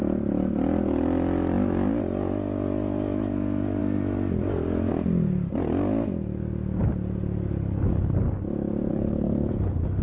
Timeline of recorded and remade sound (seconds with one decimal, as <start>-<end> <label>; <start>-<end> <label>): 0.0-8.9 recorded; 8.9-9.5 remade; 9.5-10.0 recorded